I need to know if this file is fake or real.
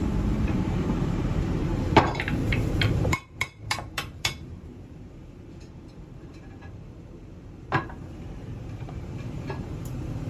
fake